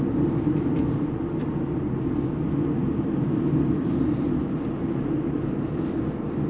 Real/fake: real